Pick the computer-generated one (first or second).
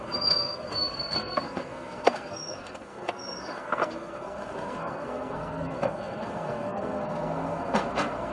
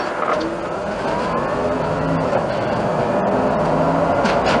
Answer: first